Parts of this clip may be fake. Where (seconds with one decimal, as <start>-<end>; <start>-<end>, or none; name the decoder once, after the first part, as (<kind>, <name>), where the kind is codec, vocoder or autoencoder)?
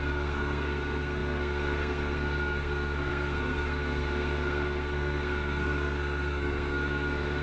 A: 0.0-7.4 (codec, SNAC)